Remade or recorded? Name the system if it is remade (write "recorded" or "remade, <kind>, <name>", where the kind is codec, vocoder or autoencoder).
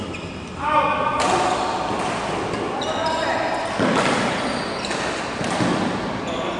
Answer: recorded